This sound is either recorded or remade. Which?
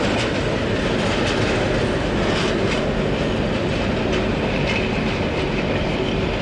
recorded